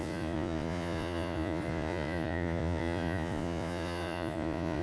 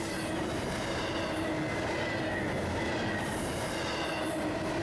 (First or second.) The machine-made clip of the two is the first